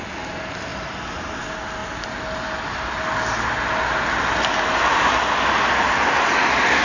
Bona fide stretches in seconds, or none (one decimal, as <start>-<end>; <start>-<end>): 0.0-0.7; 1.2-6.8